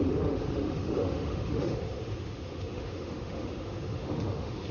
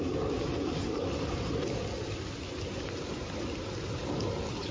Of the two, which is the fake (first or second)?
first